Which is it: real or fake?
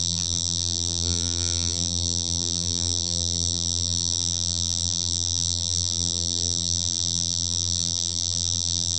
fake